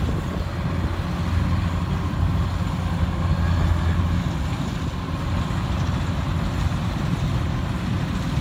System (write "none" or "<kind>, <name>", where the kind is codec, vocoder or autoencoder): none